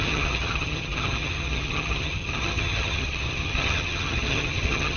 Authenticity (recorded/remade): remade